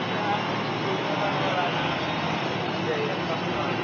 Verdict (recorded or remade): recorded